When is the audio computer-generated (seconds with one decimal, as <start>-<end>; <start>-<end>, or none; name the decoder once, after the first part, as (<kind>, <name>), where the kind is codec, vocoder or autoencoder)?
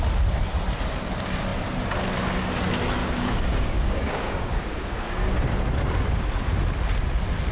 3.0-5.3 (codec, DAC)